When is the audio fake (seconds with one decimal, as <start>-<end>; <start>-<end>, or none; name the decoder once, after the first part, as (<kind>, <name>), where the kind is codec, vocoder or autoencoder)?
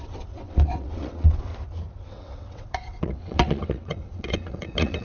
0.0-1.5 (vocoder, WaveNeXt); 2.1-5.0